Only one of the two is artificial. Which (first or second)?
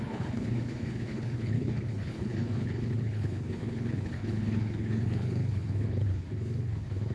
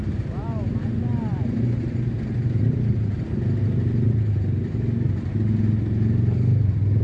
first